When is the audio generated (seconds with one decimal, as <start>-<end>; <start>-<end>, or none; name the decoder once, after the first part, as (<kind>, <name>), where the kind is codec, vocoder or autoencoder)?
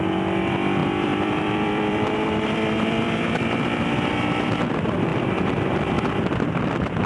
0.8-4.1 (vocoder, BigVGAN v2); 5.1-5.9